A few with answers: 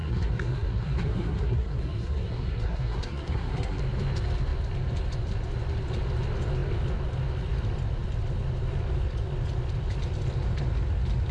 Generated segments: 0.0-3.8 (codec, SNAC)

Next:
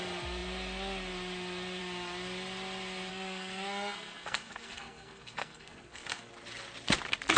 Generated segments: 3.1-6.3 (codec, SNAC)

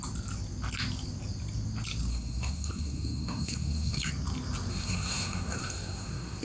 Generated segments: 2.1-4.1 (codec, SNAC); 4.7-6.4